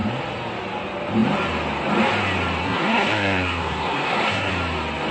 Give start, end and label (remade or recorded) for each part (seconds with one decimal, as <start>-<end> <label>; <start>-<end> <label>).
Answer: 0.0-2.6 recorded; 2.6-4.5 remade; 4.5-5.1 recorded